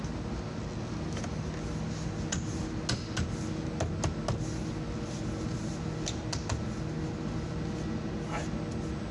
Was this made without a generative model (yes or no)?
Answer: yes